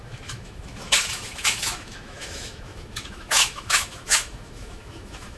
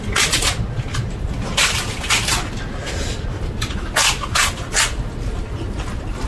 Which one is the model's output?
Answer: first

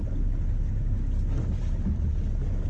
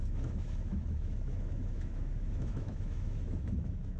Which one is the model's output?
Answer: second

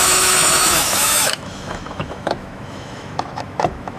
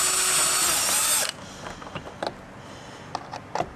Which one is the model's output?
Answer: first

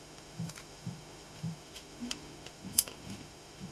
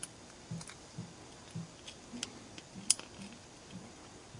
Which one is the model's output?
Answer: first